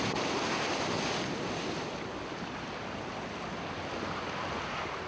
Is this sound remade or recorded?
recorded